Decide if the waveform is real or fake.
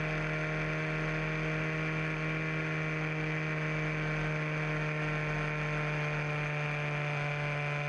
real